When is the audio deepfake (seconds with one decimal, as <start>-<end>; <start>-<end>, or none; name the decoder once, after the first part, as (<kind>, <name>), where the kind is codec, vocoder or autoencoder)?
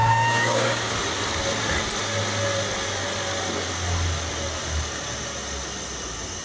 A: 0.0-0.9 (codec, DAC)